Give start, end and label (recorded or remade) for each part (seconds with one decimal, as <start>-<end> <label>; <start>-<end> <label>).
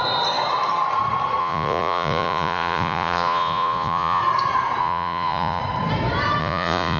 0.0-1.4 recorded; 1.4-4.2 remade; 4.2-4.8 recorded; 4.8-5.6 remade; 5.6-6.4 recorded; 6.4-7.0 remade